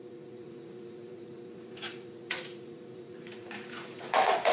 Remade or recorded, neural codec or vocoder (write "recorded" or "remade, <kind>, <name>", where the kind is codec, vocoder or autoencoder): remade, vocoder, Vocos